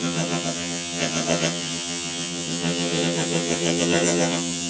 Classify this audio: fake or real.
fake